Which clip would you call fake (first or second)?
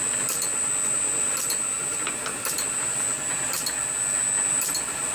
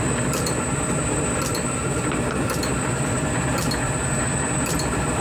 second